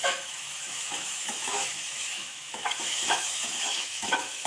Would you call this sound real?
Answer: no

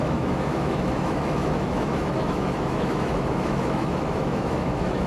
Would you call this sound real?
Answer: no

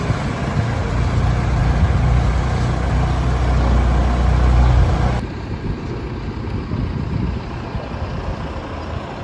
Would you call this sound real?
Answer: yes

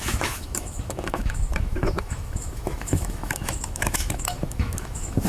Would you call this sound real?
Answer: no